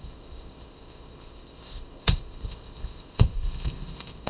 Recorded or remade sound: remade